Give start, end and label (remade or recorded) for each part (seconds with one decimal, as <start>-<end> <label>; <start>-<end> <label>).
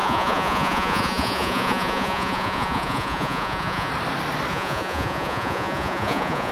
0.0-3.9 remade; 3.9-4.5 recorded; 4.5-6.5 remade